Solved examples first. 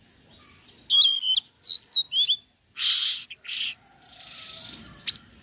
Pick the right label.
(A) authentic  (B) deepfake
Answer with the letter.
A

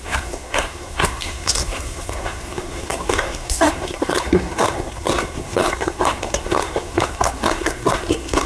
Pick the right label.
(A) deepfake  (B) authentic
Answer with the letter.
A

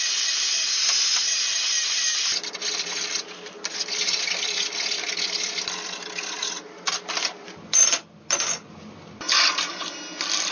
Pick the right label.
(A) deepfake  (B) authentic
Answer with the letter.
B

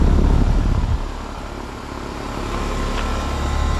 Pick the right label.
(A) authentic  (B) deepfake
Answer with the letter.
A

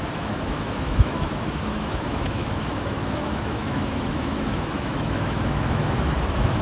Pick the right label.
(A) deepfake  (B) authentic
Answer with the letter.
A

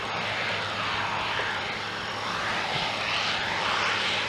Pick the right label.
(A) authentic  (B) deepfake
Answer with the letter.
A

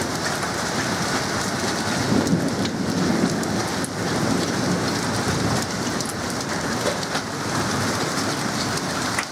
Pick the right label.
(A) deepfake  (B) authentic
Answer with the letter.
B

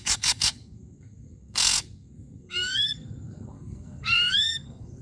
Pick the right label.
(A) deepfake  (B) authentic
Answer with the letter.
A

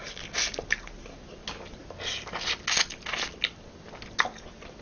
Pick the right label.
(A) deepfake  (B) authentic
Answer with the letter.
B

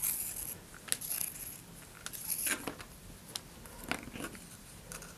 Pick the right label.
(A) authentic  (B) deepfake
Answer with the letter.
A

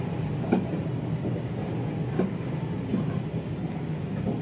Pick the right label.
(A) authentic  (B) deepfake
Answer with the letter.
A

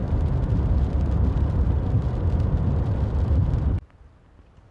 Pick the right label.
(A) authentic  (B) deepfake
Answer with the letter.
B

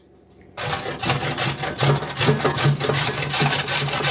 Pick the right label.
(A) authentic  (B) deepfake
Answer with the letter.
A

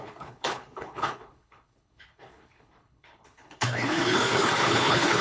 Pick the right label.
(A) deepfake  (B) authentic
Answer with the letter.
A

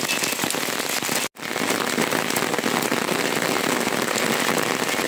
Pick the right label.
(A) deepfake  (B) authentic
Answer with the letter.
B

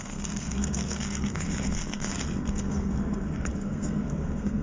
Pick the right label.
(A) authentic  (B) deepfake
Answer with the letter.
B